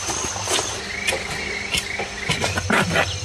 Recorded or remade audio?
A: recorded